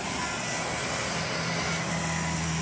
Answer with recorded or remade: recorded